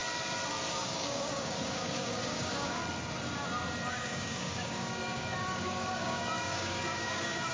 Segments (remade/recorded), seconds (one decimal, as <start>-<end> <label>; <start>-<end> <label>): 0.0-0.7 recorded; 0.7-2.8 remade; 2.8-3.9 recorded; 3.9-7.5 remade